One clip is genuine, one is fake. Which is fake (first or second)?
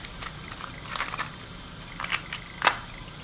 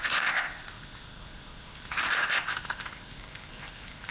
second